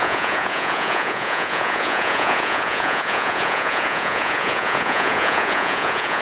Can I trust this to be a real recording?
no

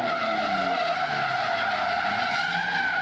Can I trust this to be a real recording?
yes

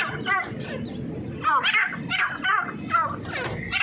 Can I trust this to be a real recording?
yes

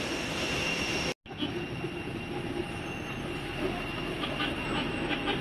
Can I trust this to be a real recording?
yes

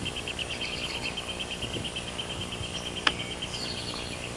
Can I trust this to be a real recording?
no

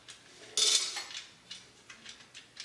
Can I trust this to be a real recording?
yes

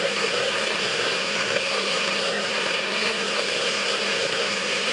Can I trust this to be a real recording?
no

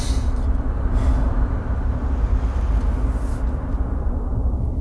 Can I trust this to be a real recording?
yes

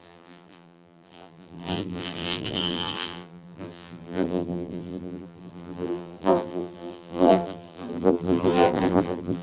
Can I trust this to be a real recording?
no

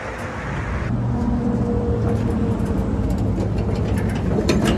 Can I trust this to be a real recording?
yes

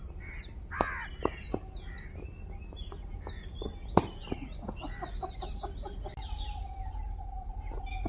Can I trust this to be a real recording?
yes